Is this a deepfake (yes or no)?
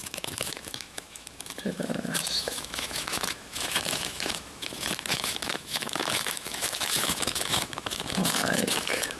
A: yes